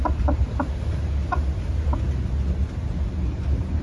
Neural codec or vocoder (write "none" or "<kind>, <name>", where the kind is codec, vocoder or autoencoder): none